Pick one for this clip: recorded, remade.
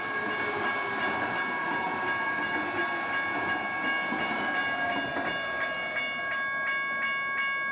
recorded